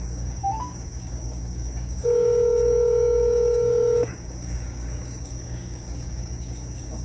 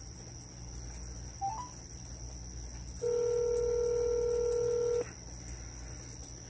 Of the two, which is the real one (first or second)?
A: second